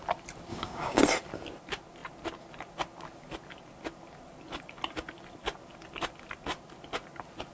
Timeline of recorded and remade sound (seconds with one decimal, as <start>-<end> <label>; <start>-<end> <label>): 0.0-0.5 recorded; 0.5-1.0 remade; 1.0-7.5 recorded